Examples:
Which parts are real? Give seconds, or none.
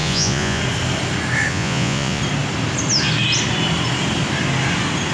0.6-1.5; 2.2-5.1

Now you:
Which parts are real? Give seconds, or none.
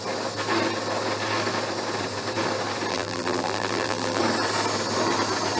0.0-2.9; 4.2-5.6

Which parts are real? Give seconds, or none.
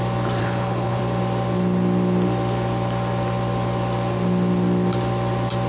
0.0-0.4; 1.0-5.7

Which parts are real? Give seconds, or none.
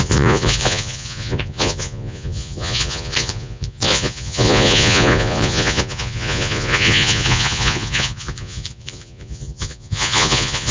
none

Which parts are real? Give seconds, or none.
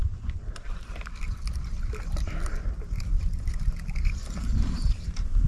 0.9-4.2